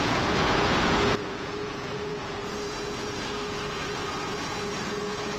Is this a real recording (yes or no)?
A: no